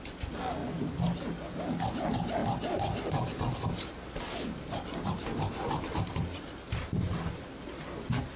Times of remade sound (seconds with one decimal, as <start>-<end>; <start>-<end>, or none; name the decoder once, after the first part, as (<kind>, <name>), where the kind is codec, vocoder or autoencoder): none

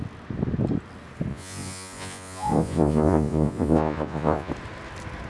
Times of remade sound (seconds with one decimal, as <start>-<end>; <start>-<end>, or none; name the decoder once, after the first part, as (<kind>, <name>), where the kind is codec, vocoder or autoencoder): 1.3-4.5 (vocoder, Vocos)

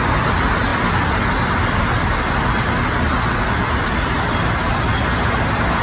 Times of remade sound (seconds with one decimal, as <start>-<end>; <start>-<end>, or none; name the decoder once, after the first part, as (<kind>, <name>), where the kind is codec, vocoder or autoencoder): none

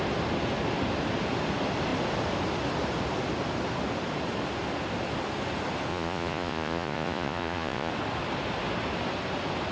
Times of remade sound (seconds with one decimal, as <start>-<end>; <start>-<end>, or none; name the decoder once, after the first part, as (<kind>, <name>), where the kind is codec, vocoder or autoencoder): 5.9-7.9 (vocoder, Vocos)

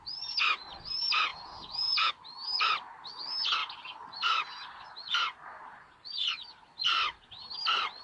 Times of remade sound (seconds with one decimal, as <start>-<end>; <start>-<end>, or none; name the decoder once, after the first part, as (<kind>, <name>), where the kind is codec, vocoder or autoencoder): 1.3-2.1 (vocoder, Vocos)

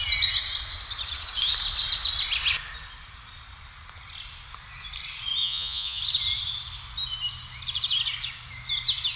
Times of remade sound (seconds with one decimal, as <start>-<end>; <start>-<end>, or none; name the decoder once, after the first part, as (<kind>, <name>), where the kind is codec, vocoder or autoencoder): 5.4-6.0 (vocoder, Vocos)

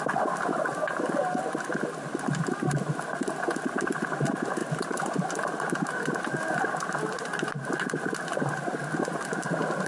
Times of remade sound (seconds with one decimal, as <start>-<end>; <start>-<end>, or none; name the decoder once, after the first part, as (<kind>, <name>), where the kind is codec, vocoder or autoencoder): none

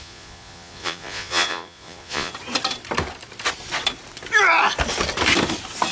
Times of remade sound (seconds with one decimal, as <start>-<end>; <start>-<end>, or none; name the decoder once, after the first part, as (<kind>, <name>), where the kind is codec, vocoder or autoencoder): 0.0-2.3 (vocoder, Vocos)